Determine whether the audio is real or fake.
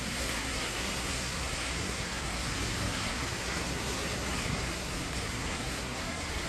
fake